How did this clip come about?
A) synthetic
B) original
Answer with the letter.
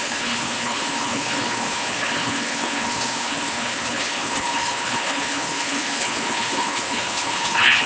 A